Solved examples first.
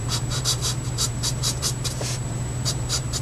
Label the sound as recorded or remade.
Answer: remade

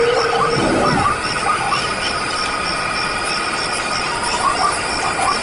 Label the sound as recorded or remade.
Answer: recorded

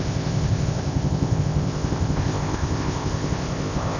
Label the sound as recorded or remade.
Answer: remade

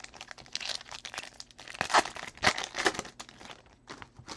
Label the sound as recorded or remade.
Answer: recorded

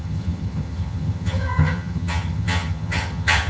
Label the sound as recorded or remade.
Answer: remade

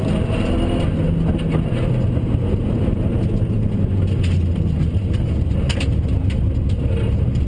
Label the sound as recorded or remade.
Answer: recorded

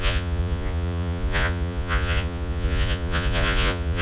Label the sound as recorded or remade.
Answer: remade